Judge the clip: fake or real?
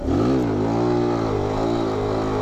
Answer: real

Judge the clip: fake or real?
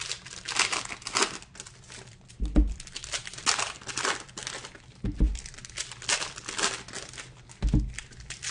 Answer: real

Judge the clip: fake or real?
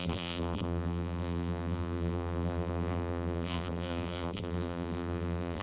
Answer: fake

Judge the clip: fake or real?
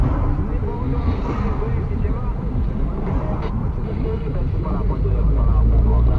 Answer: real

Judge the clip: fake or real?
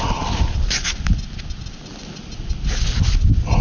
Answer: real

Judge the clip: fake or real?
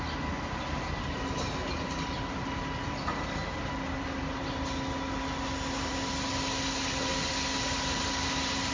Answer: real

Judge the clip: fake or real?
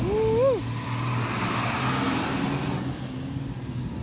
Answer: real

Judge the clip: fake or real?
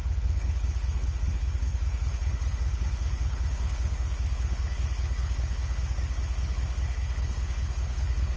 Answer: fake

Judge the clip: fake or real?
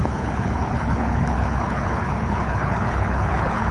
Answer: fake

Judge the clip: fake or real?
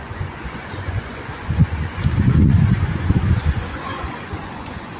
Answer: fake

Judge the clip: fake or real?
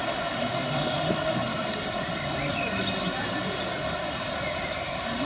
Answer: real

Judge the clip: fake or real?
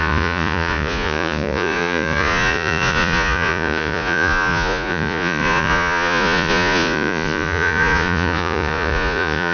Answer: fake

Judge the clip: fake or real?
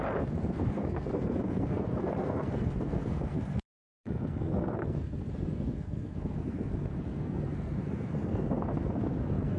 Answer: fake